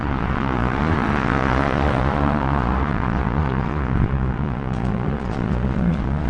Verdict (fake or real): fake